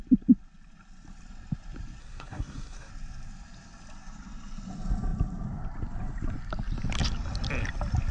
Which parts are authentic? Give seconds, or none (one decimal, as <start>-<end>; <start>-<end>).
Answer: 0.0-2.0; 2.9-8.1